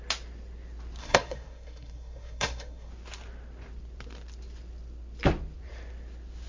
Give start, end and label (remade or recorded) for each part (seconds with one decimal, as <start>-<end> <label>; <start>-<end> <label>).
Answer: 0.0-1.0 recorded; 1.0-2.9 remade; 2.9-6.5 recorded